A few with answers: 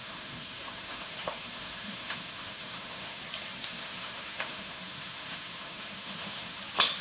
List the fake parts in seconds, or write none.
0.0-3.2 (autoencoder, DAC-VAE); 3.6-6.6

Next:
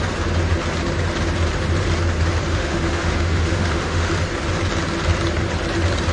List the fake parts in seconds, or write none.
2.5-4.1 (autoencoder, DAC-VAE)